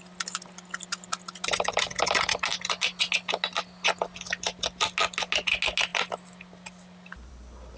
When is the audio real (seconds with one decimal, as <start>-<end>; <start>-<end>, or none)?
0.0-7.8